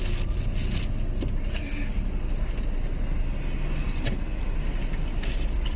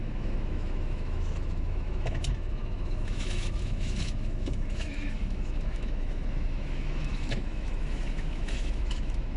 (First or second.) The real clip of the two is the first